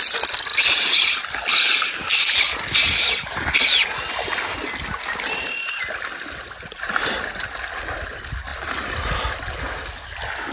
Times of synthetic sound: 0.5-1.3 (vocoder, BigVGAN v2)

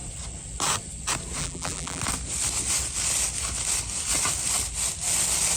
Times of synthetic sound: 1.4-2.0 (vocoder, BigVGAN v2)

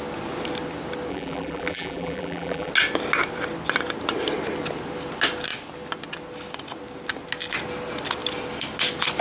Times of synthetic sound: 1.1-2.7 (vocoder, BigVGAN v2)